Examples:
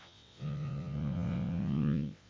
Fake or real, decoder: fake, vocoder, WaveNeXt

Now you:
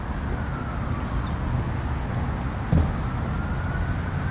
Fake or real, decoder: real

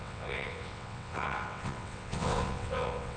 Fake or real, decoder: fake, vocoder, WaveNeXt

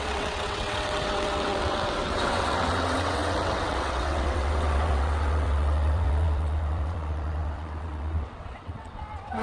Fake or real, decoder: fake, vocoder, WaveNeXt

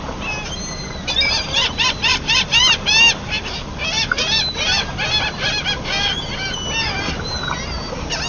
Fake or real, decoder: real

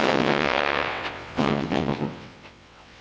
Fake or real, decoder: fake, vocoder, WaveNeXt